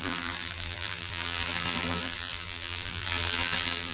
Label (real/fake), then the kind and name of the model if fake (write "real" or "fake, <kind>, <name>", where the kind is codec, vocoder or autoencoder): fake, vocoder, BigVGAN v2